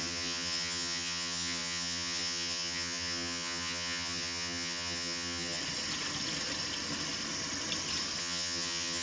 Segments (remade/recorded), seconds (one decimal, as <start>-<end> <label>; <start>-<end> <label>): 0.0-5.6 remade; 5.6-8.2 recorded; 8.2-9.0 remade